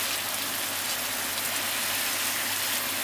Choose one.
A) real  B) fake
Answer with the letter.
A